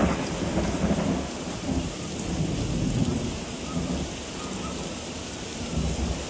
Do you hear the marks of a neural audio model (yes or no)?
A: no